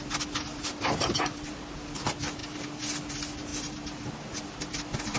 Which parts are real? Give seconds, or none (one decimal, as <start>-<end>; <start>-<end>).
0.0-5.2